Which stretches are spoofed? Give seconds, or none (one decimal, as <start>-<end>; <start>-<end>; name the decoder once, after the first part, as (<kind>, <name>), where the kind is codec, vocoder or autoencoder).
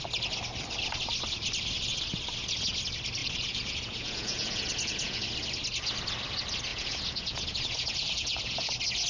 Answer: 3.2-5.2 (vocoder, Vocos); 6.7-8.7